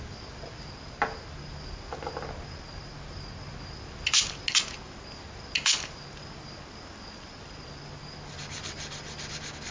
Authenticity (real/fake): real